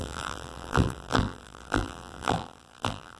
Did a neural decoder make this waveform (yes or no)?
yes